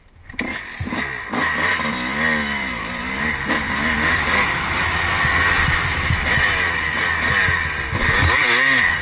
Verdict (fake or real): real